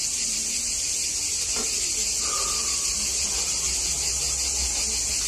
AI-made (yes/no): no